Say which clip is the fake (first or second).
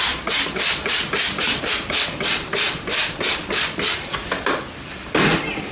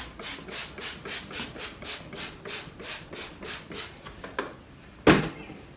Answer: first